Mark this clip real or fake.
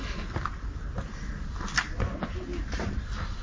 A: real